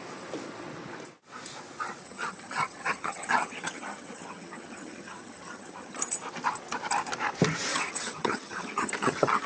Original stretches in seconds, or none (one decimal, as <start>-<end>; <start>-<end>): 0.0-2.0; 6.0-7.7